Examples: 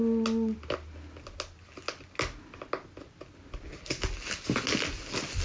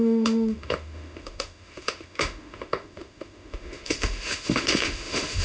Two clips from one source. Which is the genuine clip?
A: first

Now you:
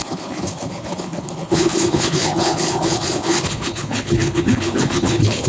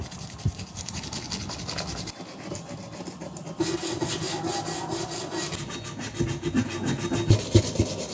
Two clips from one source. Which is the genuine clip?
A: second